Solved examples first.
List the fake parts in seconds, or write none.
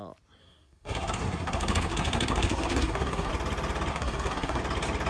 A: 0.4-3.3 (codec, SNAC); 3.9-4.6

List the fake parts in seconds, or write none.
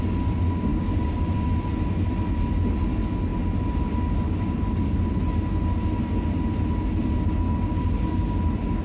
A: 0.7-1.5 (codec, DAC); 7.7-8.4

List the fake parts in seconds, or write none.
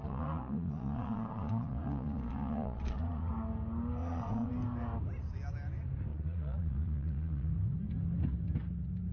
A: 0.0-3.3 (vocoder, Vocos); 4.0-4.5; 6.1-7.5